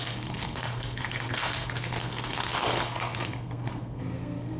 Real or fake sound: fake